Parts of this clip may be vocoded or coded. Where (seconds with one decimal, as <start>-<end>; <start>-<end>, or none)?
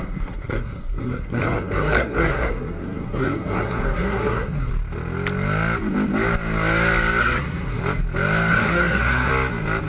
0.0-4.7; 7.2-7.8; 8.5-9.3